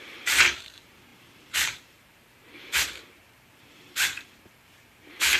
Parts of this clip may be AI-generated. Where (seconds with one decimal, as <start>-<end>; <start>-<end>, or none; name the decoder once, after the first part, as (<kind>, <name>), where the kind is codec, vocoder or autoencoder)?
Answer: 0.0-5.4 (vocoder, BigVGAN v2)